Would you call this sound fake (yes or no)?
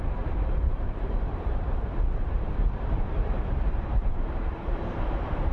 yes